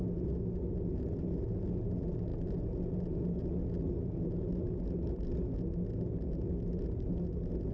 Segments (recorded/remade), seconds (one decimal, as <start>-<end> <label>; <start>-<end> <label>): 0.0-7.7 recorded